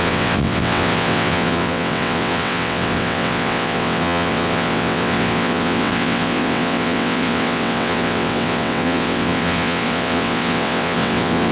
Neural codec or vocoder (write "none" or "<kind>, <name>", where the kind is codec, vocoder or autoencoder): vocoder, WaveNeXt